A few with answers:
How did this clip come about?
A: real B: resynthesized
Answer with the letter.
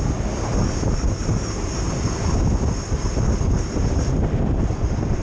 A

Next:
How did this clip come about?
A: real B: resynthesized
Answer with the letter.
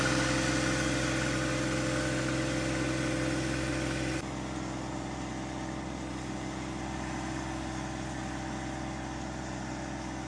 A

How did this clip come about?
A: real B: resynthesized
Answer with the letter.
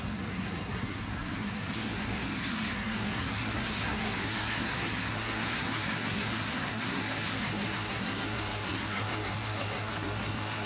B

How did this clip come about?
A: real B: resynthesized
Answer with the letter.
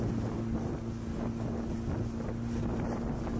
A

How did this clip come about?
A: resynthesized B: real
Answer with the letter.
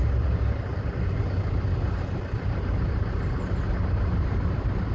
B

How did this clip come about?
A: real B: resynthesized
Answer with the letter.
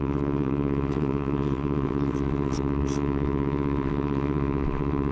B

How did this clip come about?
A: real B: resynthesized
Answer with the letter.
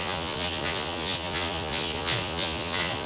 B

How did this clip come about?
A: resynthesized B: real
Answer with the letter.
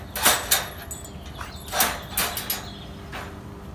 B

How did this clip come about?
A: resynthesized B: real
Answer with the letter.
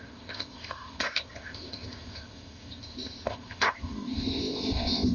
A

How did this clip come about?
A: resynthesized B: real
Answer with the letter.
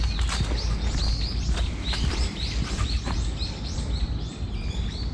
B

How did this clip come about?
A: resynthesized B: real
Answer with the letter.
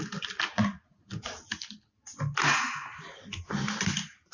B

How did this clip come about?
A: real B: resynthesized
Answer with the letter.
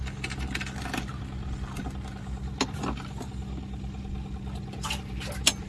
A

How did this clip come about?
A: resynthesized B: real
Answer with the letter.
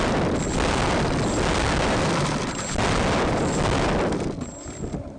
B